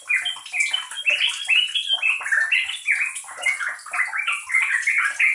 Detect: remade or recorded recorded